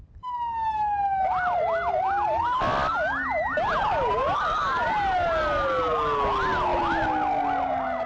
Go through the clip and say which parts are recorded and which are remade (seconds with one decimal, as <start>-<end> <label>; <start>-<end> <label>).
0.0-8.1 recorded